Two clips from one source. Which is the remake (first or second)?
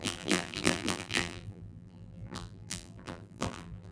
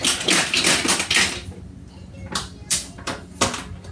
first